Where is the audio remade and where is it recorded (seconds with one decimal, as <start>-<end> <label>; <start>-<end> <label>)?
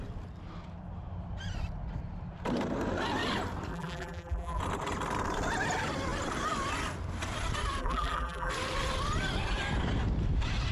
0.0-3.7 recorded; 3.7-4.6 remade; 4.6-7.8 recorded; 7.8-8.5 remade; 8.5-10.7 recorded